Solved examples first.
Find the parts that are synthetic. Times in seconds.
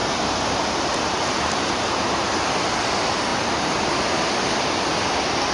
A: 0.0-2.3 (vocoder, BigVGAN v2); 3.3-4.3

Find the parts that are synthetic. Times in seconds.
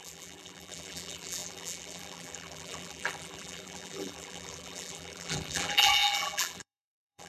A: 0.0-7.3 (vocoder, BigVGAN v2)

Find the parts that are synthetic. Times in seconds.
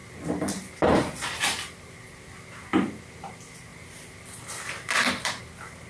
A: 0.0-1.8 (vocoder, BigVGAN v2); 2.7-3.3; 3.7-5.4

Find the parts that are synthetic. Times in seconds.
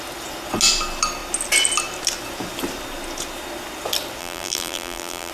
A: 4.2-5.3 (vocoder, BigVGAN v2)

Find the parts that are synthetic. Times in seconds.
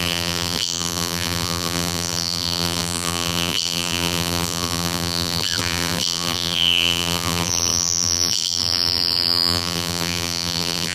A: 0.0-10.9 (vocoder, BigVGAN v2)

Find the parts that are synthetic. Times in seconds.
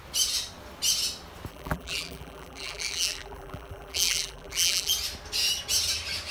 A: 1.5-4.9 (vocoder, BigVGAN v2)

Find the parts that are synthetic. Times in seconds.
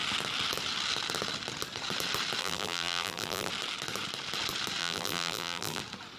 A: 2.4-3.5 (vocoder, BigVGAN v2); 4.8-5.8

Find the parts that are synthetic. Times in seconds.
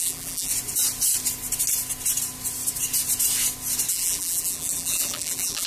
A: 0.0-0.5 (vocoder, BigVGAN v2); 3.9-5.7